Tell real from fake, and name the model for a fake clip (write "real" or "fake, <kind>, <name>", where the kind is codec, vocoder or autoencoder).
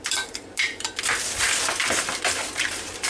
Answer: fake, vocoder, BigVGAN v2